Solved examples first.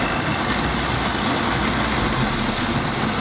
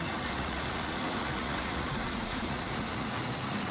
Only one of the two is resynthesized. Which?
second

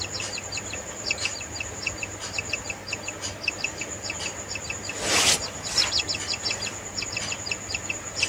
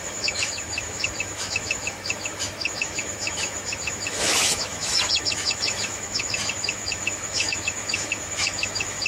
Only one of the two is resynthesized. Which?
second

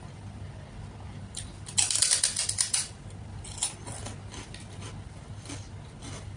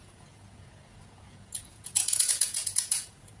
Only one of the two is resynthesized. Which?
second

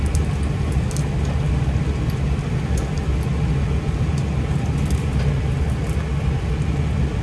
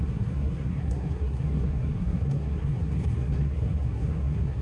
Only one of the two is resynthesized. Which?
second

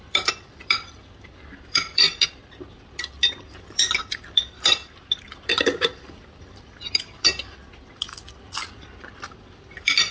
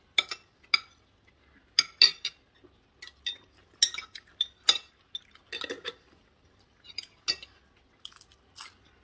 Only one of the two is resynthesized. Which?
first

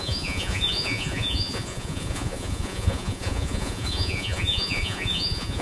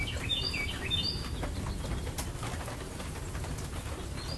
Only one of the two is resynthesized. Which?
first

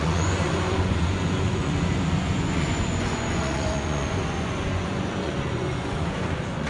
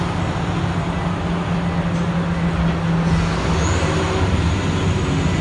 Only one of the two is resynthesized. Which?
first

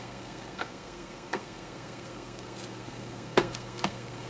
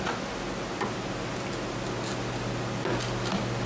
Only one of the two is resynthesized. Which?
first